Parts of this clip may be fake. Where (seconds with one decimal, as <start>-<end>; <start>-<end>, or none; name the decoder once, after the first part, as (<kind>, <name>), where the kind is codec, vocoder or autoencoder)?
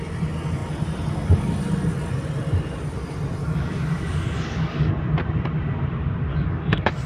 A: 3.4-4.9 (codec, DAC); 6.3-7.1